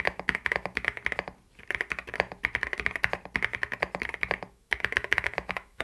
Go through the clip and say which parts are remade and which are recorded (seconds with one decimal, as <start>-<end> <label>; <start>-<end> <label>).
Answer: 0.0-1.0 remade; 1.0-4.5 recorded; 4.5-5.8 remade